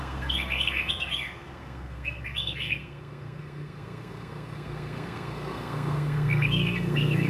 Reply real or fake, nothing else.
fake